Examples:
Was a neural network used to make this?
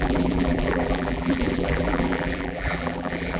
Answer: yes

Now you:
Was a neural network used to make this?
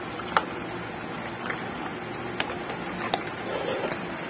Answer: no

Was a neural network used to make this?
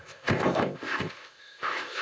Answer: yes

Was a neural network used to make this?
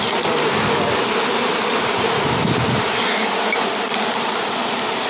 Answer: no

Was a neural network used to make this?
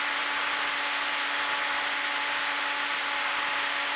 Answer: no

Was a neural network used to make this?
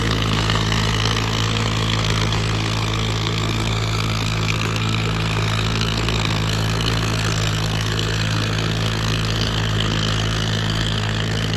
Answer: yes